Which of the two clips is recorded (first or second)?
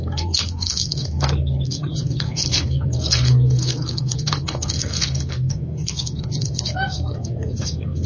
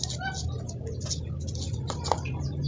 second